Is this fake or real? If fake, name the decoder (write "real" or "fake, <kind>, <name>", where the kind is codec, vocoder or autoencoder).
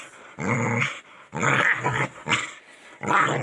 real